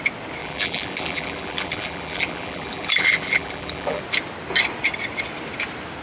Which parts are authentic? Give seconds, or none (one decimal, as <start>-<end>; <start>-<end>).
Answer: 0.0-0.4; 4.0-6.0